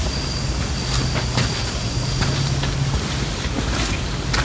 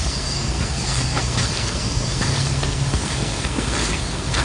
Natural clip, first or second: first